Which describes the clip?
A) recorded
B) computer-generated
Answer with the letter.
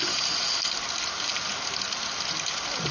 A